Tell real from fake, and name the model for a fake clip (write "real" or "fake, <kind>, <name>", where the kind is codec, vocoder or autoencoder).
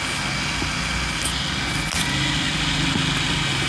real